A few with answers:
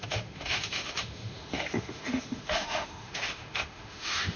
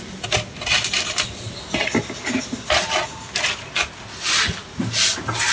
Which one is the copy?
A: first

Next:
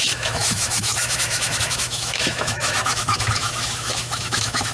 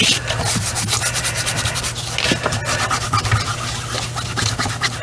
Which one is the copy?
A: first